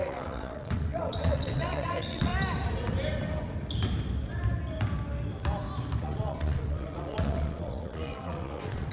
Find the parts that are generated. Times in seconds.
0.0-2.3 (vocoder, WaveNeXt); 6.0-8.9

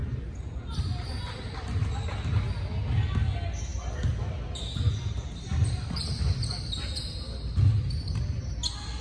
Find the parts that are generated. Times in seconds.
none